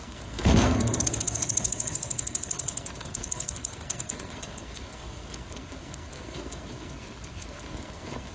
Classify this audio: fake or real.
fake